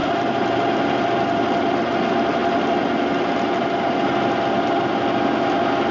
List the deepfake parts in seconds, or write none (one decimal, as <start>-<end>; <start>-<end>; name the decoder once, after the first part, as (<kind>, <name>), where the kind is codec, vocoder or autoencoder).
none